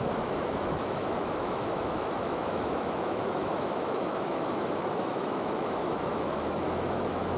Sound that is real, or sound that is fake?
fake